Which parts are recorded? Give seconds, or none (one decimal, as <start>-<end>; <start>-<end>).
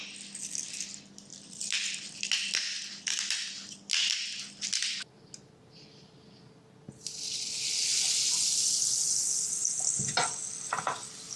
0.0-1.3; 2.2-11.4